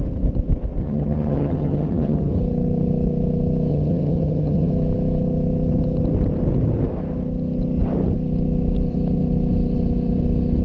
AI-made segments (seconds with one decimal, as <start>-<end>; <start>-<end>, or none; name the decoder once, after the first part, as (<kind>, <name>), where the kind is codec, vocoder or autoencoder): 0.8-2.3 (vocoder, HiFi-GAN); 3.7-4.7